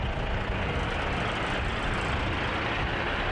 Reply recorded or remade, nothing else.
recorded